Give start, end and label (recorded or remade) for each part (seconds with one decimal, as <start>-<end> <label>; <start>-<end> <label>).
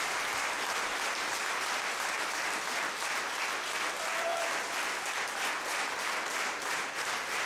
0.0-7.5 recorded